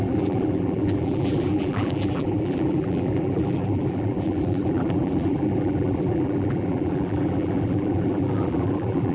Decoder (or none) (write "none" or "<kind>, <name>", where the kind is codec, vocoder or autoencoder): vocoder, BigVGAN v2